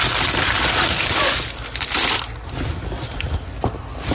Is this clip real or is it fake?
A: fake